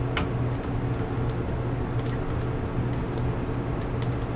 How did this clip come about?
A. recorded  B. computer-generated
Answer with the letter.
A